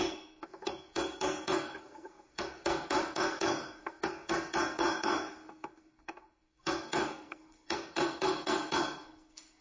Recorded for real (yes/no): no